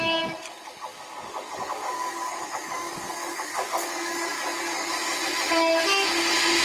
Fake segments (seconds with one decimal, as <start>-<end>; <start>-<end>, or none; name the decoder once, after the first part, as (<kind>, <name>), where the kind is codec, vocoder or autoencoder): 0.9-4.9 (codec, DAC)